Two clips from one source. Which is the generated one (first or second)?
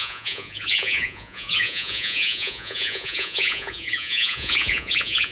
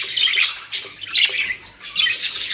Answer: first